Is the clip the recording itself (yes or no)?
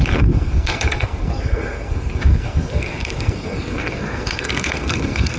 no